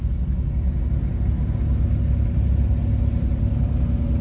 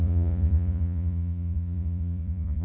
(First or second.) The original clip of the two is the first